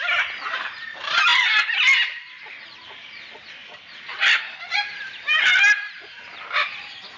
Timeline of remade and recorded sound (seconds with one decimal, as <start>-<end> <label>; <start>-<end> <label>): 0.0-7.2 recorded